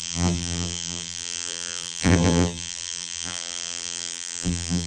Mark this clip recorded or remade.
remade